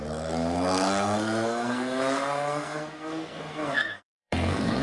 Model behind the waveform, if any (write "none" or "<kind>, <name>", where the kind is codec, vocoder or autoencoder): codec, SNAC